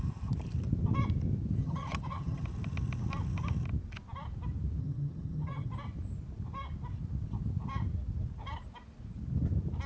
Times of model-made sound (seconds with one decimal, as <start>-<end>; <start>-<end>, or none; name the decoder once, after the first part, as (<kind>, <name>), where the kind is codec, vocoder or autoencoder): 1.6-2.4 (vocoder, HiFi-GAN); 4.8-5.7